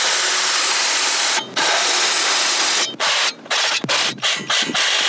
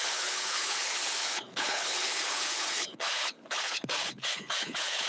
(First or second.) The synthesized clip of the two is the second